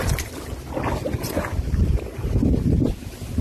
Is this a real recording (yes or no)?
yes